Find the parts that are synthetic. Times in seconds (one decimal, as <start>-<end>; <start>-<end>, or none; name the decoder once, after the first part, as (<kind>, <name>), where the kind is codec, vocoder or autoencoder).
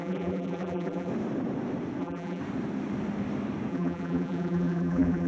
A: 0.0-1.1 (vocoder, BigVGAN v2); 2.0-2.4; 3.7-5.3